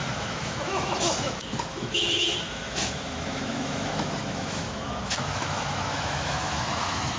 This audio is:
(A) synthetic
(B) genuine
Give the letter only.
A